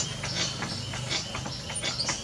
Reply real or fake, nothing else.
real